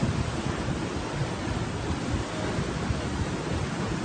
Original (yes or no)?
yes